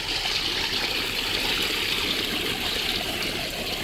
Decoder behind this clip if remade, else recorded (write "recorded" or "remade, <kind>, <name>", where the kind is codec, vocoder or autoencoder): recorded